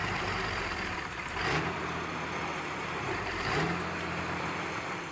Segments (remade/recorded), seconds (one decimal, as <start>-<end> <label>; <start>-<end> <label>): 0.0-1.8 remade; 1.8-2.8 recorded; 2.8-5.1 remade